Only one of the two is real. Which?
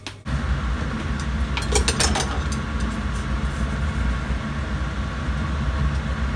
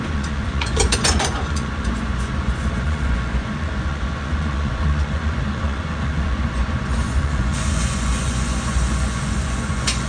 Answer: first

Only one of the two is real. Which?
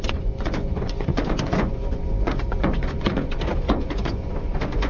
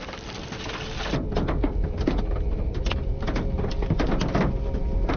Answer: second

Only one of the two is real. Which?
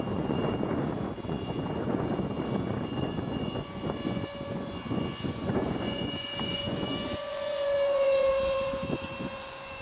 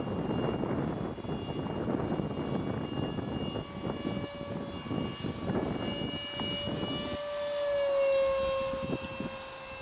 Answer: second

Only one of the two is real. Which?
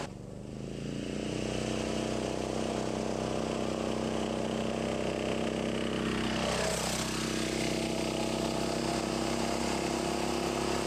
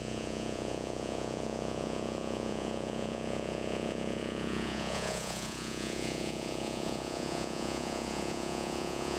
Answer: first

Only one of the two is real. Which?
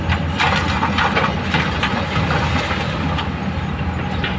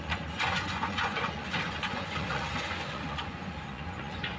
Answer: first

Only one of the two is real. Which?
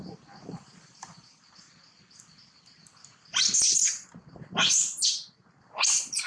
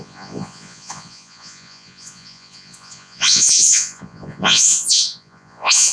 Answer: first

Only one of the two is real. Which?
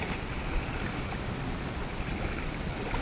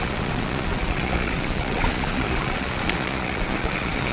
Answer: first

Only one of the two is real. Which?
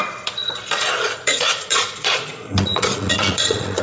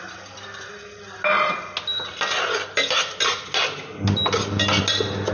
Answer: second